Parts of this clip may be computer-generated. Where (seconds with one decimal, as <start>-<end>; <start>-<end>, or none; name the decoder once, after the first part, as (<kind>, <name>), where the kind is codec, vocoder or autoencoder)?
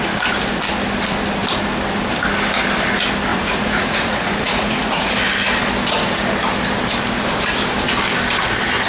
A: 3.3-5.1 (vocoder, Vocos)